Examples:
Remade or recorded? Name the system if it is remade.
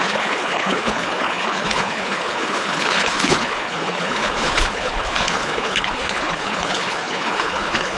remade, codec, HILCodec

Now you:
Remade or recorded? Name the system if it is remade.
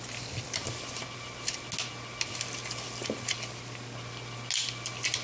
recorded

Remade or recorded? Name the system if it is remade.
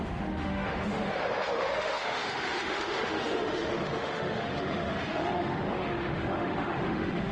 remade, autoencoder, DAC-VAE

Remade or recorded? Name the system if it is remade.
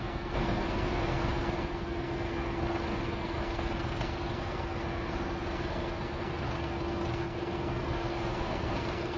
remade, codec, SNAC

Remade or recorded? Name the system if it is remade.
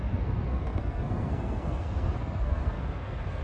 remade, codec, SNAC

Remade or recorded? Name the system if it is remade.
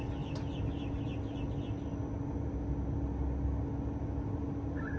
recorded